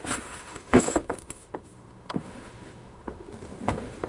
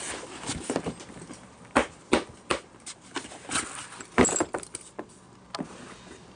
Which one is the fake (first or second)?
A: first